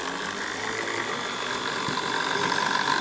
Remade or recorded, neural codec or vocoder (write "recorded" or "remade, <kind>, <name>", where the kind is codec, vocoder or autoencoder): recorded